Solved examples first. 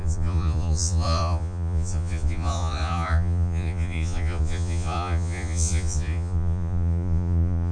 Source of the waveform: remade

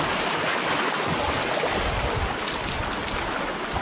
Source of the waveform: recorded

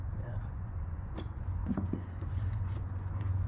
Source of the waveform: remade